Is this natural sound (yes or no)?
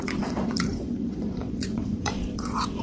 no